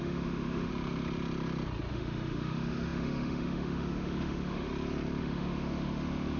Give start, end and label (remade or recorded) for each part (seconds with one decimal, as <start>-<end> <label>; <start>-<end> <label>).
0.0-0.7 remade; 0.7-1.9 recorded; 1.9-4.7 remade; 4.7-5.2 recorded; 5.2-6.4 remade